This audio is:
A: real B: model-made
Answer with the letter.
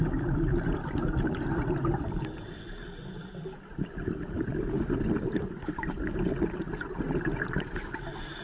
A